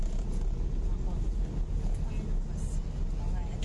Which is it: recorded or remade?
recorded